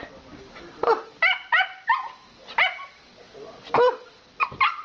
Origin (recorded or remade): recorded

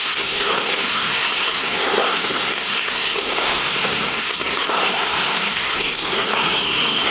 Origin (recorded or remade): remade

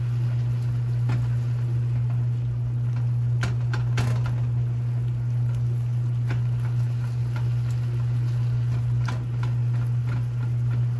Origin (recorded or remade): recorded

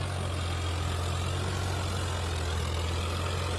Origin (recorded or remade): recorded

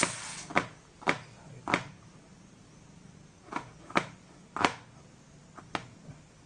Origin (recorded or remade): recorded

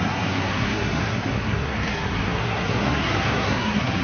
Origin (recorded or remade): remade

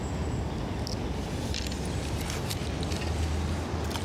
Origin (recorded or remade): recorded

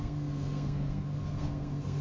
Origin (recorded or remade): remade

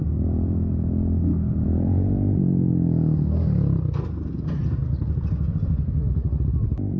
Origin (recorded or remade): recorded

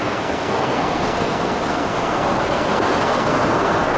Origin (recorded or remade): remade